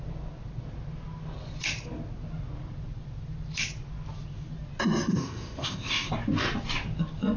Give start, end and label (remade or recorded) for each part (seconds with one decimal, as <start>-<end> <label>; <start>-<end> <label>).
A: 0.0-5.1 recorded; 5.1-6.1 remade; 6.1-7.4 recorded